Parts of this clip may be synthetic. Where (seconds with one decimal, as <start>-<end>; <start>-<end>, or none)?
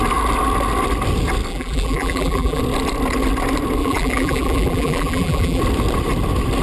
1.5-2.6; 3.8-5.6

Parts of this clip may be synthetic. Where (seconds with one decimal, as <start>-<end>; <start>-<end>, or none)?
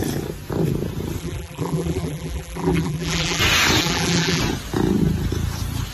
1.2-3.4; 3.8-4.4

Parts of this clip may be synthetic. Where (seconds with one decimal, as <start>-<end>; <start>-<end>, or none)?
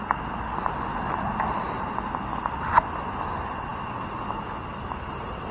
none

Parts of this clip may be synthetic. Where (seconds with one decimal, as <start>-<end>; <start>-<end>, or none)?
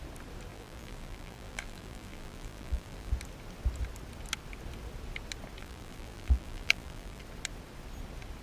0.5-3.1; 5.6-7.2